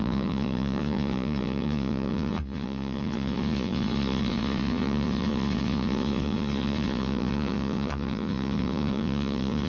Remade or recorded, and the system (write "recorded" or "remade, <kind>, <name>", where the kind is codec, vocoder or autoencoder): remade, vocoder, Vocos